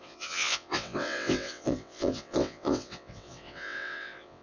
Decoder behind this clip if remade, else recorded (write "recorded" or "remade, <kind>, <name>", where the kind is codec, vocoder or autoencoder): remade, vocoder, WaveNeXt